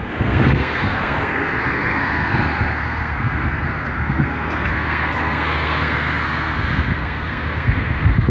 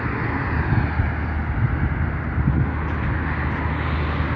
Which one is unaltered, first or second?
second